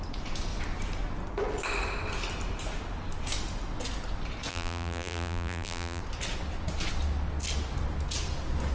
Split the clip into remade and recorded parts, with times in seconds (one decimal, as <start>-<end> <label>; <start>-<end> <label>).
0.0-4.5 recorded; 4.5-6.0 remade; 6.0-8.7 recorded